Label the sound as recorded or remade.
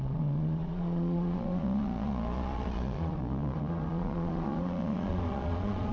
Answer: remade